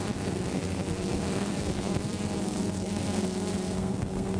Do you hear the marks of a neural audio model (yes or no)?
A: yes